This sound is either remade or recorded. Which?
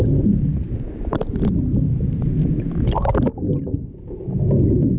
recorded